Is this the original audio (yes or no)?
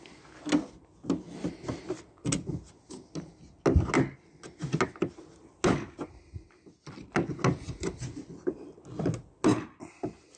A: yes